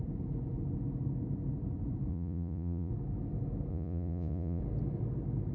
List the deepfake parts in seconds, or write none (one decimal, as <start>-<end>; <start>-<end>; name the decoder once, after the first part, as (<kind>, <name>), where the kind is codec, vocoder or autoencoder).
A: 2.1-2.9 (vocoder, Vocos); 3.7-4.6